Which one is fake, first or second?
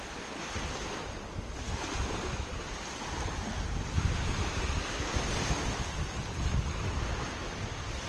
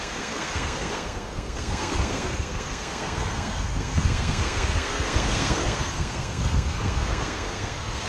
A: second